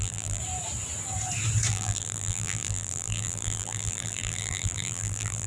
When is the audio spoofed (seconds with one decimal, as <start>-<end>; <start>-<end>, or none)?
0.0-0.4; 1.7-5.5